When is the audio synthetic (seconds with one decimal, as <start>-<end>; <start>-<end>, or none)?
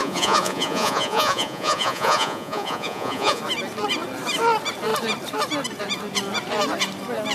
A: 0.0-3.4